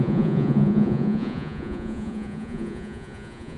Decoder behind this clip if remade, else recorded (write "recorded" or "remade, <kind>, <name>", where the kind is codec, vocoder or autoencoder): remade, vocoder, Vocos